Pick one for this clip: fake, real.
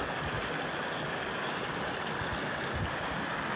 real